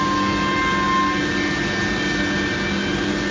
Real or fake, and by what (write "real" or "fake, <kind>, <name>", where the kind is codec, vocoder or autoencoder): real